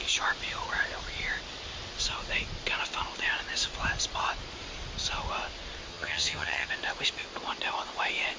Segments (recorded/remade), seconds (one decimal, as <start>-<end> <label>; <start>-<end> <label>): 0.0-5.9 recorded; 5.9-6.7 remade; 6.7-8.4 recorded

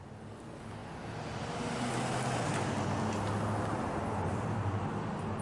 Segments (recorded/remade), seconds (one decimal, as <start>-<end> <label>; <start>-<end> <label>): 0.0-5.4 recorded